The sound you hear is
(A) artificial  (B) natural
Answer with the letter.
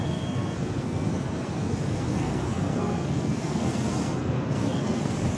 A